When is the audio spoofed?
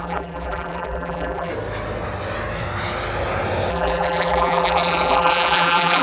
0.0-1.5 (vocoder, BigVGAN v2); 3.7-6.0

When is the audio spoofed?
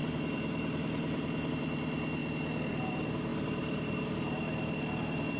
0.0-2.2 (vocoder, BigVGAN v2); 2.7-5.4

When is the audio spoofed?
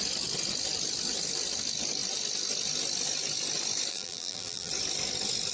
3.9-4.7 (vocoder, BigVGAN v2)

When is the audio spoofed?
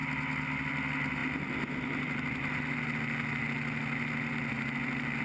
none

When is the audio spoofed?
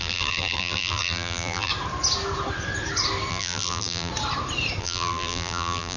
0.0-1.7 (vocoder, BigVGAN v2); 3.3-4.1; 4.8-6.0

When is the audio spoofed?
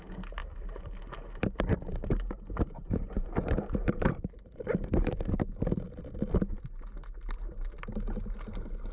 0.4-1.0 (vocoder, BigVGAN v2); 2.8-5.6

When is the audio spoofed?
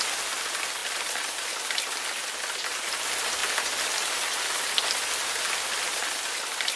0.0-3.4 (vocoder, BigVGAN v2); 4.6-6.8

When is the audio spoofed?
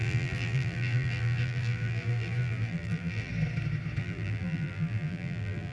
0.0-3.3 (vocoder, BigVGAN v2); 4.0-5.7